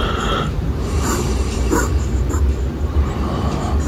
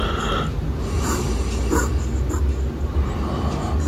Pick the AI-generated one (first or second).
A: first